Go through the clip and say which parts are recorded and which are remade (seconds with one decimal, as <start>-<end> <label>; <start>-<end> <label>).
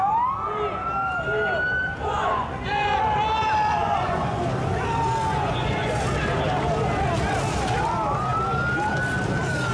0.0-2.0 recorded; 2.0-3.0 remade; 3.0-3.8 recorded; 3.8-4.4 remade; 4.4-5.3 recorded; 5.3-5.9 remade; 5.9-9.7 recorded